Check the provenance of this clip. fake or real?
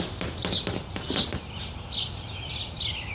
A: real